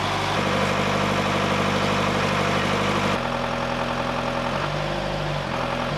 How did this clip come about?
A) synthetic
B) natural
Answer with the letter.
B